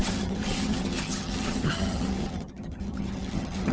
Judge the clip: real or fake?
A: fake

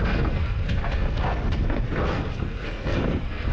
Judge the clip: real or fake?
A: fake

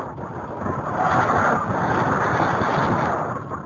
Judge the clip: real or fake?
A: real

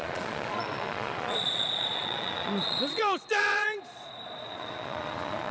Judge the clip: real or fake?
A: fake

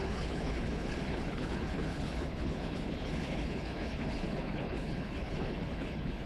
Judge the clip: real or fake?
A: fake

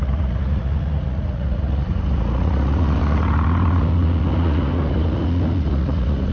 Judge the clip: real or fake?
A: fake